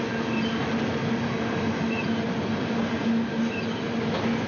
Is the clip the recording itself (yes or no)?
yes